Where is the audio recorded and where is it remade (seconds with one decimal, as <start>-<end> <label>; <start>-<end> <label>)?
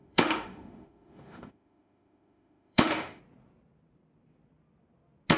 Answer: 0.0-3.2 remade; 3.2-5.4 recorded